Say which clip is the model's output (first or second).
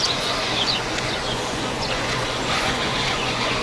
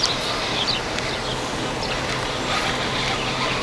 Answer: first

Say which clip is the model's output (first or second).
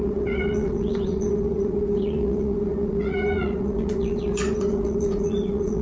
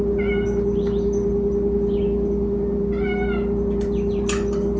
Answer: first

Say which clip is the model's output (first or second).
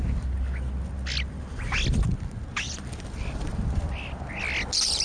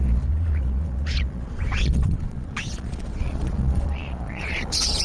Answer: second